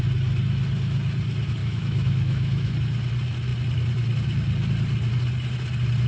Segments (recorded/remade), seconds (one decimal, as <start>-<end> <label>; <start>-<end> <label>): 0.0-1.6 recorded; 1.6-2.7 remade; 2.7-6.1 recorded